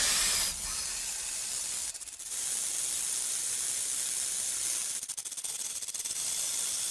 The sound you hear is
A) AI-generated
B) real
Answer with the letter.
A